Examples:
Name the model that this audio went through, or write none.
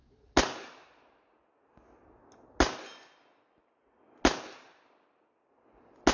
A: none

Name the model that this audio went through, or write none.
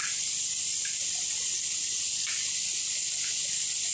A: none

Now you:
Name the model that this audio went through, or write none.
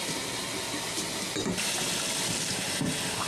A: none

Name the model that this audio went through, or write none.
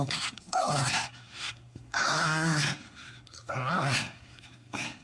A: codec, SNAC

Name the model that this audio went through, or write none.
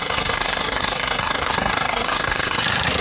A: codec, SNAC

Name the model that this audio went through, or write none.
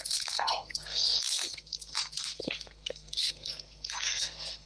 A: codec, SNAC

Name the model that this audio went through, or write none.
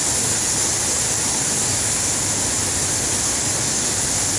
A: none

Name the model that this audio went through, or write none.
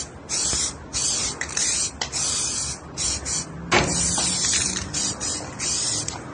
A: none